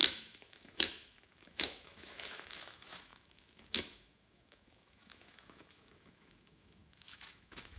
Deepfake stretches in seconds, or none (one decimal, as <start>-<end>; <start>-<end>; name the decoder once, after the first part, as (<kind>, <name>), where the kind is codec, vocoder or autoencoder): 0.0-7.8 (autoencoder, DAC-VAE)